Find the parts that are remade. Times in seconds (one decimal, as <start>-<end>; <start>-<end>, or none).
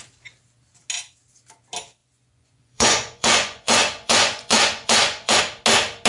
2.0-5.4